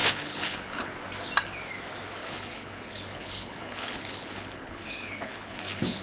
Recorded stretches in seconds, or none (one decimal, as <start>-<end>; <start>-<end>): 0.9-2.2